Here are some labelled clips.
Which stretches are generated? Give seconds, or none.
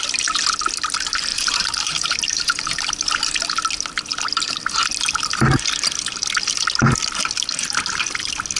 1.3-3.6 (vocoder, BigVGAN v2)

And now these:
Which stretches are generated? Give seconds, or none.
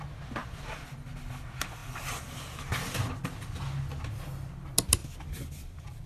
0.4-1.1 (vocoder, BigVGAN v2); 1.8-3.4; 5.0-6.1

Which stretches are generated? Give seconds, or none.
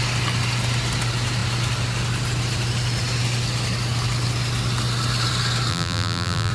5.7-6.5 (vocoder, BigVGAN v2)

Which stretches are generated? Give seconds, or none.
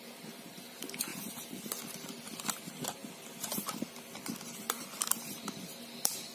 0.0-1.1 (vocoder, BigVGAN v2); 1.9-6.3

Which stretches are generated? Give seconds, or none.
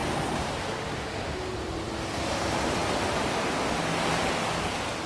0.0-1.0 (vocoder, BigVGAN v2)